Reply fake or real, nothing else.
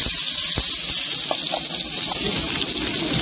real